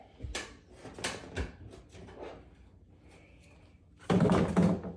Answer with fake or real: real